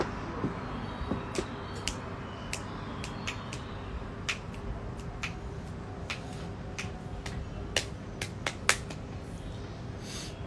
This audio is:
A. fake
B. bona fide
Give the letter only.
B